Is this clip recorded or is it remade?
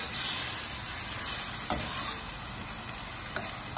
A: recorded